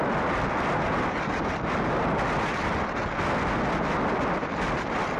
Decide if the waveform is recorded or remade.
recorded